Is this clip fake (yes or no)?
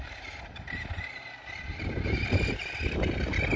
no